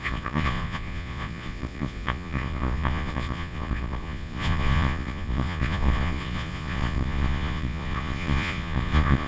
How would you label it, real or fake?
fake